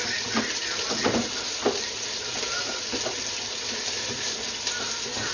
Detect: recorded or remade recorded